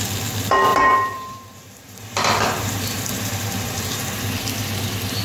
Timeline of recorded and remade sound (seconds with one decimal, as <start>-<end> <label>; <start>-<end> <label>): 0.0-0.7 recorded; 0.7-3.8 remade; 3.8-5.2 recorded

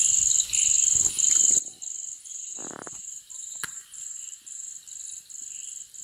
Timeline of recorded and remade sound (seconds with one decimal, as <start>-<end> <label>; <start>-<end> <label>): 0.0-2.3 recorded; 2.3-4.7 remade; 4.7-6.0 recorded

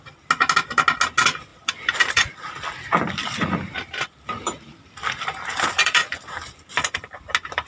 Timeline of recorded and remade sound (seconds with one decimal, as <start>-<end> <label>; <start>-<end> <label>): 0.0-1.5 recorded; 1.5-2.7 remade; 2.7-3.2 recorded; 3.2-7.3 remade; 7.3-7.7 recorded

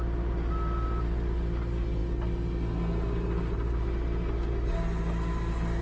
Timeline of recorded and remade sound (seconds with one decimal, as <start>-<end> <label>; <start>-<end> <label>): 0.0-5.8 recorded

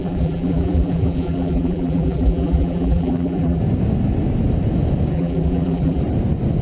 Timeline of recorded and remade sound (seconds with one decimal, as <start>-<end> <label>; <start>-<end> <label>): 0.0-3.6 remade; 3.6-5.1 recorded; 5.1-6.0 remade; 6.0-6.6 recorded

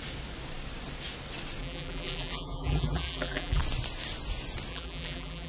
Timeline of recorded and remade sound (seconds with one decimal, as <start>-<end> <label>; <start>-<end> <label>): 0.0-1.6 recorded; 1.6-3.6 remade; 3.6-4.7 recorded; 4.7-5.5 remade

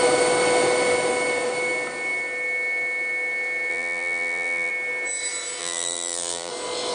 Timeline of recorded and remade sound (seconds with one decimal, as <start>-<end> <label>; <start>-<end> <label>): 0.0-3.7 recorded; 3.7-4.7 remade; 4.7-5.6 recorded; 5.6-6.5 remade; 6.5-6.9 recorded